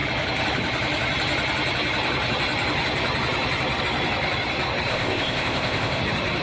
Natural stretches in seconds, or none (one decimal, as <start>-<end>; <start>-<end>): 0.0-4.9; 6.0-6.4